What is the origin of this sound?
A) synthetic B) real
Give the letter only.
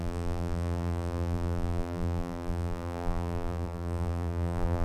A